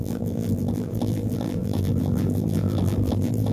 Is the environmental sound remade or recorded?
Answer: remade